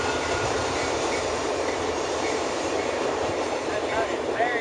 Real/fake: fake